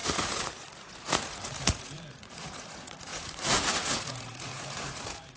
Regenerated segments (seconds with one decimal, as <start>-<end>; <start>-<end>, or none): 0.0-5.4